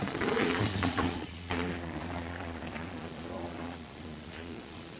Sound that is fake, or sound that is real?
fake